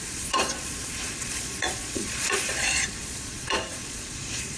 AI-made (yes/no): yes